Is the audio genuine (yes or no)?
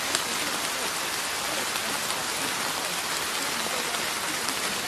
yes